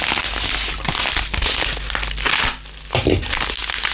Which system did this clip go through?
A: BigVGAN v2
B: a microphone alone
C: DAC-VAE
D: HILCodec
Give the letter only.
B